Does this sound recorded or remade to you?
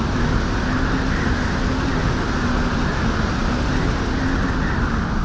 recorded